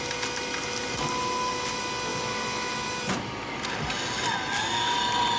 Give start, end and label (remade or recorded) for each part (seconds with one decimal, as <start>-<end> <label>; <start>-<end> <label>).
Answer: 0.0-5.4 recorded